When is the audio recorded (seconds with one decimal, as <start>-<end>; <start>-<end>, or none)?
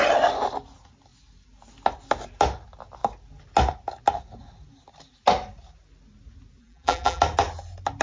0.0-6.6; 7.2-8.0